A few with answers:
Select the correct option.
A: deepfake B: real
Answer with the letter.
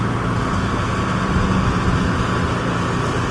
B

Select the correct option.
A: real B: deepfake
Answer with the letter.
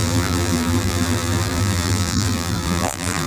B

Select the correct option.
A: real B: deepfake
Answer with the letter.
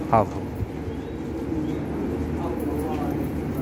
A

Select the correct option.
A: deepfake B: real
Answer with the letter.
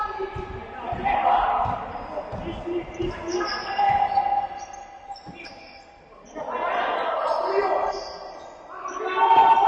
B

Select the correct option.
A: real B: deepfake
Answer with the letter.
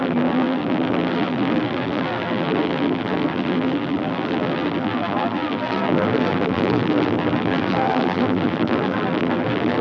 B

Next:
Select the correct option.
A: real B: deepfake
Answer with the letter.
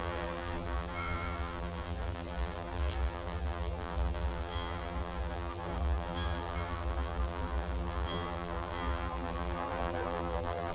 B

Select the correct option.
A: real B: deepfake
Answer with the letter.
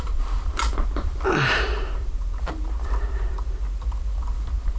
B